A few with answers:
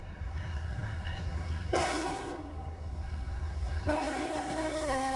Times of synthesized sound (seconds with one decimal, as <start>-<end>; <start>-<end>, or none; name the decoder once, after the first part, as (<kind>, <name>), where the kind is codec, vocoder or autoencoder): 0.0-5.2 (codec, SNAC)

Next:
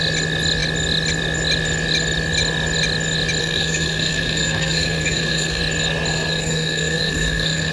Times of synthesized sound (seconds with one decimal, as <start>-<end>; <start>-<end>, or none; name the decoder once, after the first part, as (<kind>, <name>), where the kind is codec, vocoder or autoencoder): 3.4-5.6 (codec, SNAC); 6.1-7.7

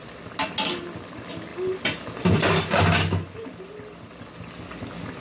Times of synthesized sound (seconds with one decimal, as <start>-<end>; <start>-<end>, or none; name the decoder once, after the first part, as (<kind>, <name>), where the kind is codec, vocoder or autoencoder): none

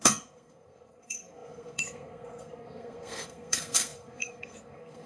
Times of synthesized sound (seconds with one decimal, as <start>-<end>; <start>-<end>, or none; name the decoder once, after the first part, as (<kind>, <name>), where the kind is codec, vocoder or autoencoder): 0.0-5.1 (codec, SNAC)

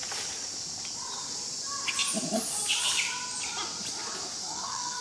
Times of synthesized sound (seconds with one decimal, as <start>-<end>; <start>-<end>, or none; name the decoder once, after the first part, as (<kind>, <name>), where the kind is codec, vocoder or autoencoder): 4.4-5.0 (codec, SNAC)

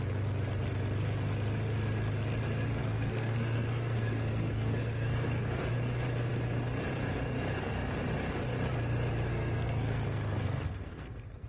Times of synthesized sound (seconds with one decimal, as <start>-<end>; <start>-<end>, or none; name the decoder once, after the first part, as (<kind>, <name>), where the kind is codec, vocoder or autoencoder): 2.8-5.7 (codec, SNAC); 9.3-11.5